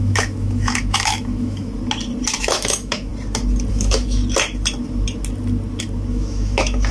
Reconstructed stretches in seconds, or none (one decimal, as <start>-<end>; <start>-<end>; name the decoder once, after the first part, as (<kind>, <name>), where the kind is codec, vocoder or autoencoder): 0.0-1.7 (autoencoder, DAC-VAE); 2.4-3.1; 3.7-4.2; 6.1-6.9